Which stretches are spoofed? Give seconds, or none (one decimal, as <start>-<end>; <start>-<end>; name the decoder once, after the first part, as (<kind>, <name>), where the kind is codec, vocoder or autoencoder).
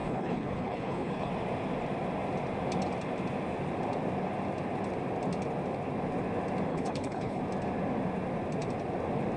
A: 0.0-1.3 (codec, HILCodec); 6.7-7.4